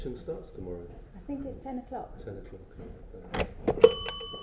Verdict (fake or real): real